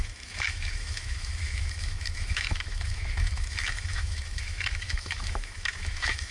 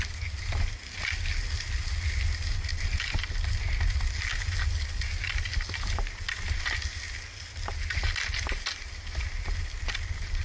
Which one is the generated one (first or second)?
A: first